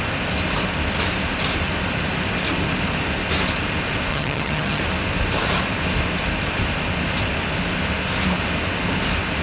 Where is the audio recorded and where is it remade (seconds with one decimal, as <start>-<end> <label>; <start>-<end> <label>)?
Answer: 0.0-4.1 recorded; 4.1-4.8 remade; 4.8-9.4 recorded